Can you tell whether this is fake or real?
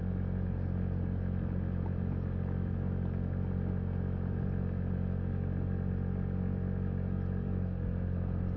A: real